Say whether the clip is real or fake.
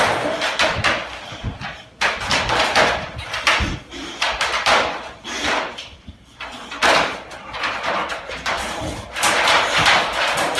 fake